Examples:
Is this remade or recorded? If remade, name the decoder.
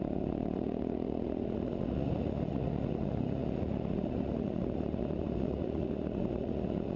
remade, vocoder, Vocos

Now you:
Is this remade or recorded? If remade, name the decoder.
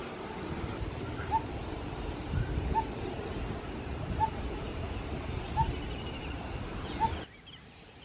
remade, vocoder, BigVGAN v2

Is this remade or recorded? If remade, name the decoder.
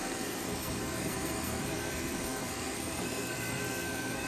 remade, codec, SNAC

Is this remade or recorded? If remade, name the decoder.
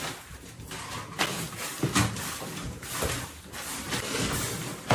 recorded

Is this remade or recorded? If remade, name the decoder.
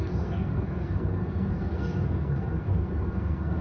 remade, codec, SNAC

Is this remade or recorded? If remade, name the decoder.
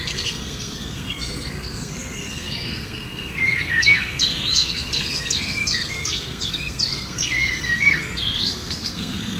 remade, codec, SNAC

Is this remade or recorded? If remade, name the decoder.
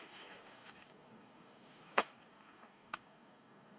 remade, codec, DAC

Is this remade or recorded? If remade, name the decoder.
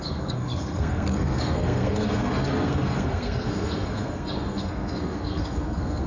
remade, codec, SNAC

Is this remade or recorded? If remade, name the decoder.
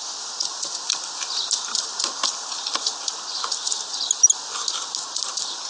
recorded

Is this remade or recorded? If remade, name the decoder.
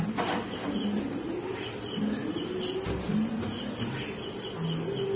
recorded